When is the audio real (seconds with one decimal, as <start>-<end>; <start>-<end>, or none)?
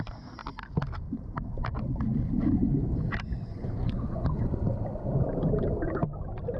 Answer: 0.0-3.5; 4.6-6.6